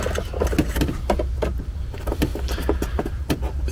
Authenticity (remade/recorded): recorded